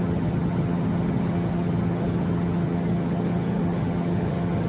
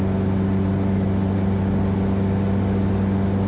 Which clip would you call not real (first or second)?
first